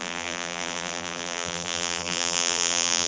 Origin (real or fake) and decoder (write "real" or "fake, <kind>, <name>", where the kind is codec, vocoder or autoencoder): fake, vocoder, BigVGAN v2